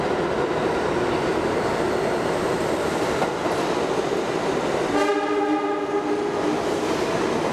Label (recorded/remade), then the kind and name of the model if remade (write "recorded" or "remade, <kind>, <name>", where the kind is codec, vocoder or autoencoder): recorded